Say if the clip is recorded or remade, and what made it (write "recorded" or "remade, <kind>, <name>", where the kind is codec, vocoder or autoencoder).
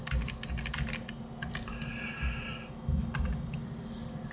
recorded